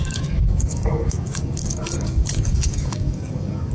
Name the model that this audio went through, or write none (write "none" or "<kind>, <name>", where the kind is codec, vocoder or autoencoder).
codec, DAC